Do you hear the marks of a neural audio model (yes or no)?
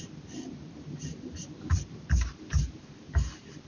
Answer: yes